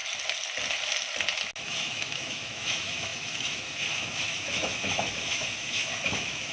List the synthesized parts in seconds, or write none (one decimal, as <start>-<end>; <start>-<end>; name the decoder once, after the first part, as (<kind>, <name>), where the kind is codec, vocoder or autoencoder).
1.6-6.5 (autoencoder, DAC-VAE)